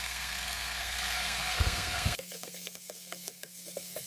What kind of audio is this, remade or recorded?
remade